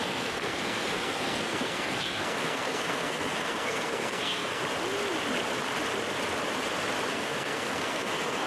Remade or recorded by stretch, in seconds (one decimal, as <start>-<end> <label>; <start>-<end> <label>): 0.0-4.6 remade; 4.6-7.1 recorded; 7.1-8.5 remade